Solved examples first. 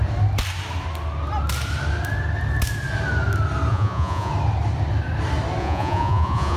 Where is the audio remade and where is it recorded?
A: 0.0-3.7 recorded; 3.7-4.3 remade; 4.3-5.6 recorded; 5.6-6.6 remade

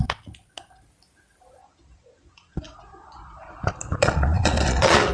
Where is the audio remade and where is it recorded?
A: 0.0-1.6 recorded; 1.6-5.1 remade